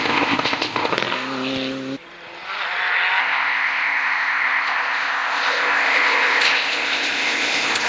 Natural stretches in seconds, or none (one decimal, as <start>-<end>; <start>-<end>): 0.9-3.2